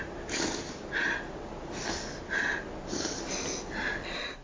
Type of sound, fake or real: real